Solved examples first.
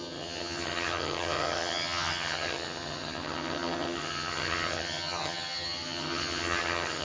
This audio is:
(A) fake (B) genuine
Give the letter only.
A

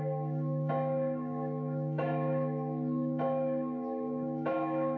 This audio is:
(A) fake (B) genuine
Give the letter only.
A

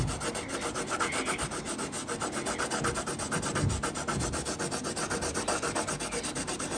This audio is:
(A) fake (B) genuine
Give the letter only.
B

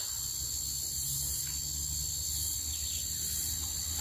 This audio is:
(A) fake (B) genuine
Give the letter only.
B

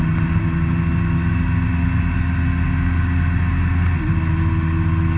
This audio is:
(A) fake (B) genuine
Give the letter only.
B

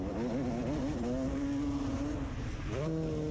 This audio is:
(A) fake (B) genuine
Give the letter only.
B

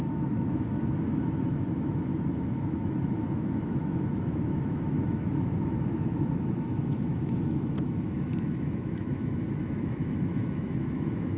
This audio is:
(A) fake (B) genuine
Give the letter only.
A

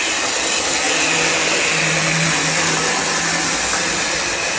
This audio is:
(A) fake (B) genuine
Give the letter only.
B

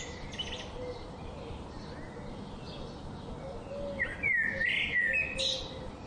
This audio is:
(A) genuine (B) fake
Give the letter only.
A